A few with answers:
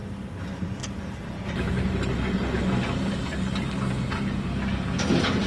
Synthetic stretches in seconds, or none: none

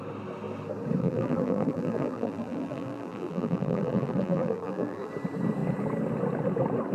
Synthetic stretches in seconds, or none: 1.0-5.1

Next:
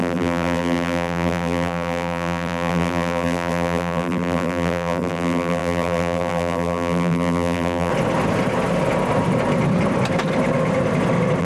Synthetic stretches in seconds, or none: 0.0-7.9